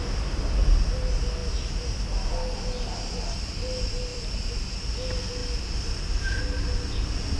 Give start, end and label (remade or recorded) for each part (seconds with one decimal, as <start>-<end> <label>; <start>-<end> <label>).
0.0-4.1 recorded; 4.1-4.7 remade; 4.7-5.4 recorded; 5.4-6.4 remade; 6.4-7.4 recorded